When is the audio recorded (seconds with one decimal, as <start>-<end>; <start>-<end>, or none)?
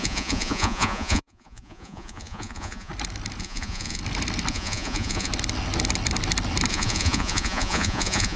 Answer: 2.9-3.4; 4.0-4.5; 5.3-6.7